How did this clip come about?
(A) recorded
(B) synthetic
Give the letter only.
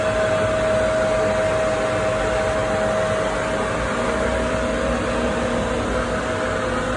A